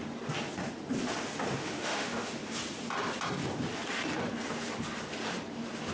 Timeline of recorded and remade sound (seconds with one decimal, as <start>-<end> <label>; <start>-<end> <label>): 0.0-1.6 recorded; 1.6-2.3 remade; 2.3-5.9 recorded